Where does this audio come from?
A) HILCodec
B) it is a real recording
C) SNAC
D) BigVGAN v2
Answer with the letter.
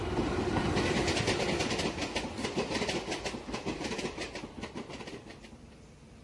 B